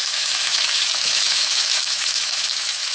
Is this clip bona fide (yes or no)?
no